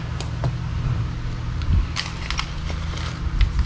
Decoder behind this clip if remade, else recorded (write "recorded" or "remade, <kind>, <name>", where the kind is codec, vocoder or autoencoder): recorded